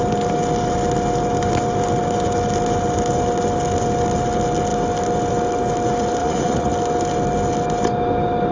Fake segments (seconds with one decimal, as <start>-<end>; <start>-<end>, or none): 6.2-6.7